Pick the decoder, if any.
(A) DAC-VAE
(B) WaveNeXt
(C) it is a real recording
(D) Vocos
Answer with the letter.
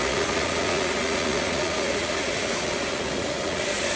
D